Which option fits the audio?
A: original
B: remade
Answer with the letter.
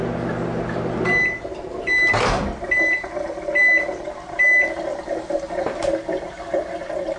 A